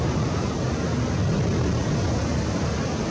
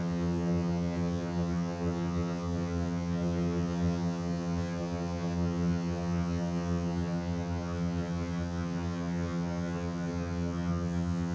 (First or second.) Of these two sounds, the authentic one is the first